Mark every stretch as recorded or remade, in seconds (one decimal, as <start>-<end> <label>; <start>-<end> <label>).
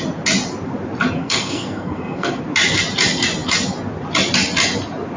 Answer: 0.0-1.2 recorded; 1.2-2.4 remade; 2.4-5.2 recorded